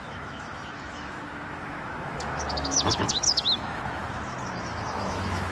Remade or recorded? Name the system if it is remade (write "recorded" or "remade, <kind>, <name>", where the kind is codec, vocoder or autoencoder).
remade, autoencoder, DAC-VAE